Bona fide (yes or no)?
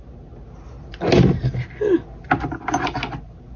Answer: yes